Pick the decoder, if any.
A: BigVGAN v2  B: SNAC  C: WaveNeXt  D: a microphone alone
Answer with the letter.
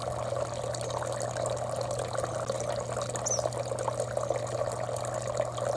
D